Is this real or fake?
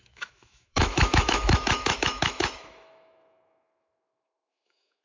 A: fake